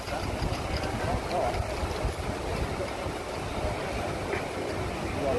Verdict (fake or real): real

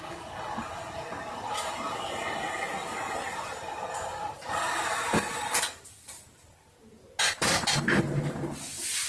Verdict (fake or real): real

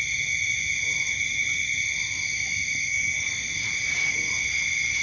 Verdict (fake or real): real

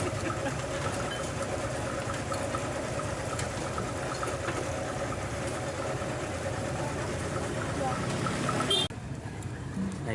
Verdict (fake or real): real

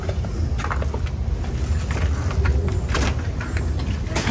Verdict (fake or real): real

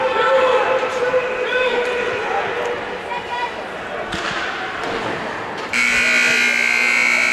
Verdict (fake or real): real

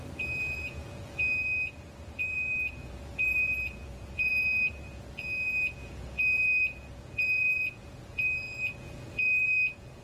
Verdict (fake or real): fake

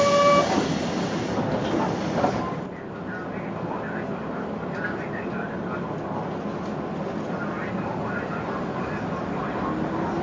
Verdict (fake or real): real